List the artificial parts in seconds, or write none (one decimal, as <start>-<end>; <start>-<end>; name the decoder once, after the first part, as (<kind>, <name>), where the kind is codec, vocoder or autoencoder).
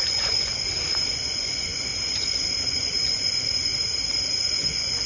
0.0-0.5 (vocoder, Vocos); 1.1-1.9; 2.7-3.7; 4.3-5.1